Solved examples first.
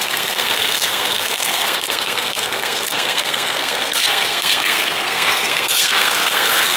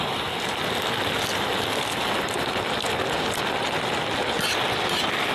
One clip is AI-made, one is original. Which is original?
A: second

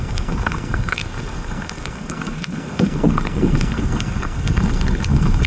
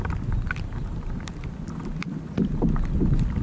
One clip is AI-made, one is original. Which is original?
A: second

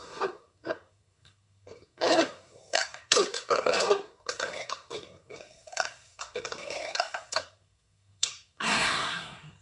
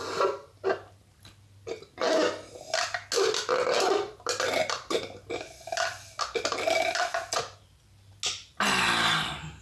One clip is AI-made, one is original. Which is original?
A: second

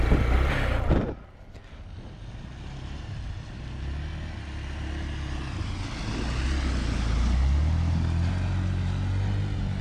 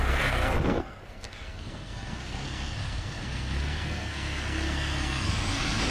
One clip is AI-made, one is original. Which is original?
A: first